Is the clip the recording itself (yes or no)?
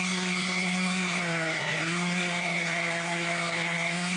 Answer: no